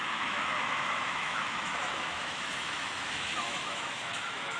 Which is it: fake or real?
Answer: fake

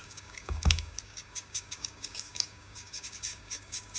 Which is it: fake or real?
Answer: fake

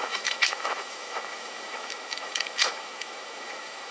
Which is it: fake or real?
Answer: fake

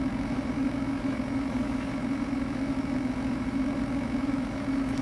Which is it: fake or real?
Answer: fake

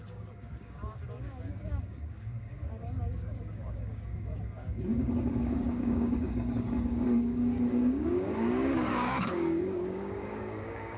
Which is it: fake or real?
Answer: fake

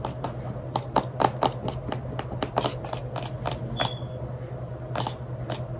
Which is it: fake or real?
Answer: real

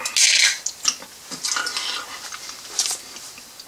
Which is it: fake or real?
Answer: real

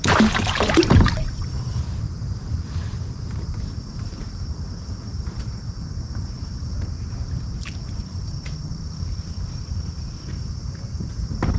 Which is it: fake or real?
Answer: fake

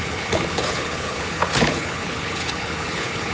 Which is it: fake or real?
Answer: fake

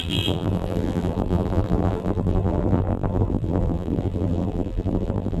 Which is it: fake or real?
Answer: fake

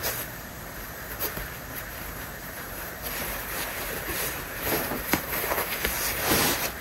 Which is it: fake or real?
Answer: fake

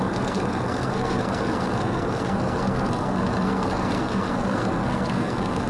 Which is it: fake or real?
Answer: fake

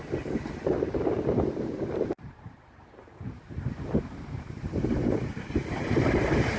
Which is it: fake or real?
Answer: fake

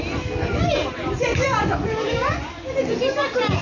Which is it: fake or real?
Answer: real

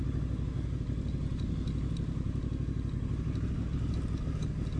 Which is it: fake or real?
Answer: real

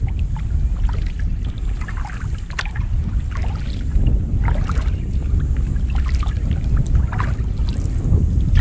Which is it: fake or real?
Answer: real